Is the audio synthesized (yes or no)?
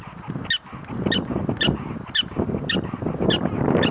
no